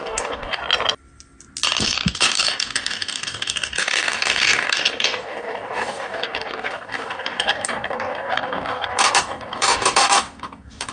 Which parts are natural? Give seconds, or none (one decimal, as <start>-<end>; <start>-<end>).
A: 0.6-1.8